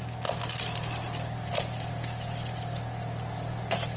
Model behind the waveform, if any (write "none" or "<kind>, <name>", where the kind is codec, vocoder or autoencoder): none